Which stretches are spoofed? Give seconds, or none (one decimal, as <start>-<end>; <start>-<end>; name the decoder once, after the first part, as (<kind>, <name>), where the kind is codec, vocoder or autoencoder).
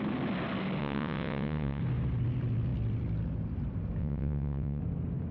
0.8-1.8 (vocoder, WaveNeXt); 4.0-4.8